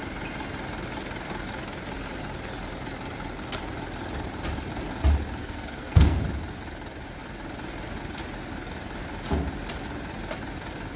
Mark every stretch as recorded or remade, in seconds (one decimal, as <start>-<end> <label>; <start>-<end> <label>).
0.0-5.4 recorded; 5.4-6.2 remade; 6.2-11.0 recorded